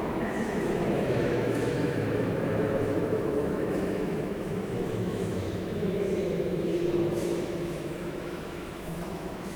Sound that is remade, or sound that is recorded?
remade